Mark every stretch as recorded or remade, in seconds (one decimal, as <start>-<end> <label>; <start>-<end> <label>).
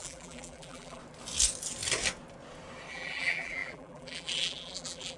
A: 0.0-1.0 remade; 1.0-2.9 recorded; 2.9-5.2 remade